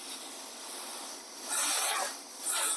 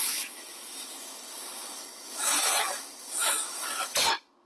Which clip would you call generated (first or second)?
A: second